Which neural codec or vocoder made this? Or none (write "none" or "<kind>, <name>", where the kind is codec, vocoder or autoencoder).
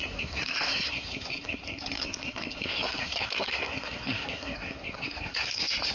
codec, SNAC